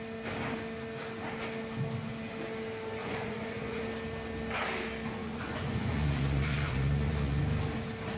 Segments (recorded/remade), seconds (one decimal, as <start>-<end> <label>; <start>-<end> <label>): 0.0-3.0 recorded; 3.0-3.8 remade; 3.8-5.2 recorded; 5.2-7.4 remade; 7.4-8.2 recorded